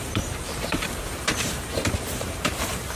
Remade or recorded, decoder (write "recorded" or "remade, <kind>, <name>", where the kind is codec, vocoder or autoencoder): remade, vocoder, BigVGAN v2